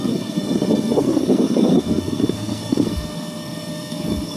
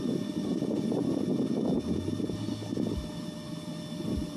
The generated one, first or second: first